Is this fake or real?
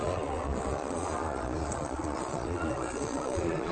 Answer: fake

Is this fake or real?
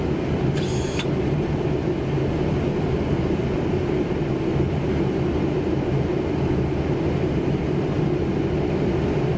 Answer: real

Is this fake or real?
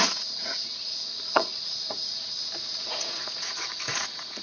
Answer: fake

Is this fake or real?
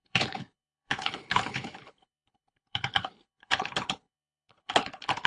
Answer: fake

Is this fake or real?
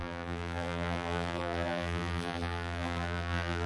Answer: fake